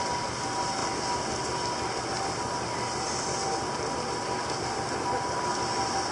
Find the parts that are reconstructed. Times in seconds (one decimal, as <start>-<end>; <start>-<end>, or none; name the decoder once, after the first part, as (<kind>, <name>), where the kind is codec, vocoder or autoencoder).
none